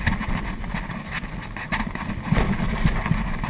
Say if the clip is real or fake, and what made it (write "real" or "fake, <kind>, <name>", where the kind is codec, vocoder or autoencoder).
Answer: real